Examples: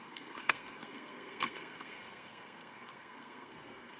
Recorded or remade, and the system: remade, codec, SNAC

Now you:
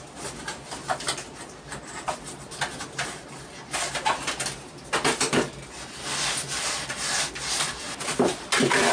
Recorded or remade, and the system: recorded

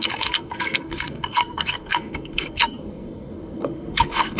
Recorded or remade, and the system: remade, codec, SNAC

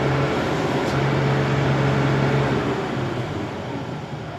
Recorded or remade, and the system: recorded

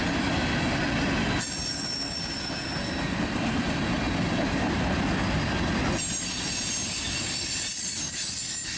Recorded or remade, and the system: recorded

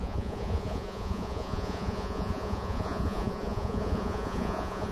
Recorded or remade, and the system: remade, vocoder, Vocos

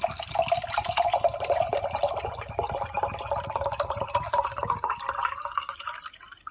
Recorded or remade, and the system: recorded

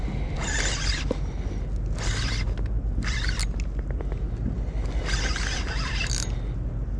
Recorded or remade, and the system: recorded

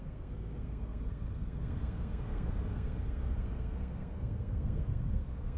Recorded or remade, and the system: remade, codec, SNAC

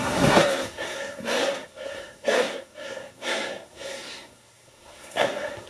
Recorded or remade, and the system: remade, codec, SNAC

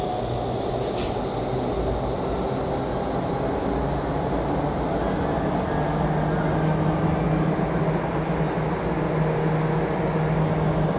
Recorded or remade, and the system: recorded